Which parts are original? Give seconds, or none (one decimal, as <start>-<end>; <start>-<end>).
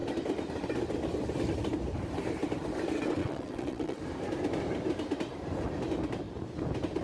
0.0-3.2; 4.0-7.0